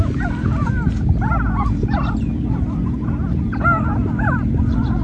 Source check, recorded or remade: remade